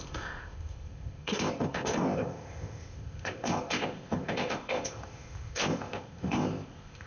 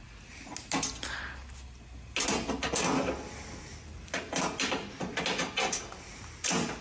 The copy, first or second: first